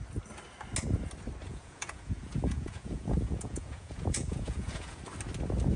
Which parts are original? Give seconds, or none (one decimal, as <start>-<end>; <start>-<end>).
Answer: 0.0-1.5; 5.0-5.8